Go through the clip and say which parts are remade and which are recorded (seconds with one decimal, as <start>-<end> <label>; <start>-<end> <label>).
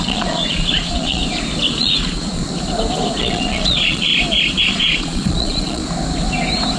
0.0-1.2 remade; 1.2-1.8 recorded; 1.8-2.4 remade; 2.4-3.2 recorded; 3.2-4.1 remade; 4.1-4.6 recorded; 4.6-5.8 remade; 5.8-6.8 recorded